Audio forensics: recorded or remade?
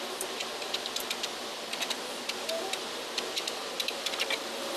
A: remade